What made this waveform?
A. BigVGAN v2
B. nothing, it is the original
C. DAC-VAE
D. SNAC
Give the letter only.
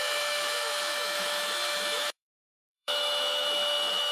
C